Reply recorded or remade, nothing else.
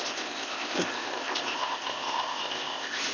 remade